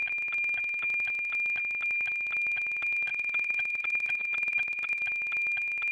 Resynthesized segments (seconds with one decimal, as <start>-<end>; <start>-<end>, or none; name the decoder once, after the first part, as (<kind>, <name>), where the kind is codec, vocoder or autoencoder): 3.1-5.0 (vocoder, Vocos)